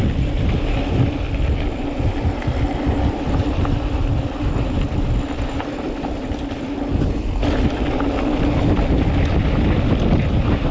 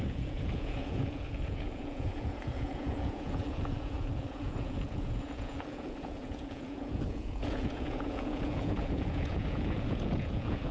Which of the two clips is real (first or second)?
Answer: first